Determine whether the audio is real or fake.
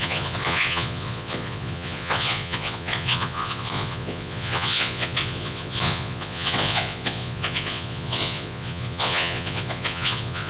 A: fake